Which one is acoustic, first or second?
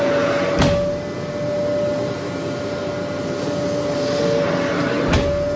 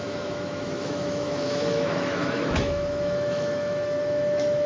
first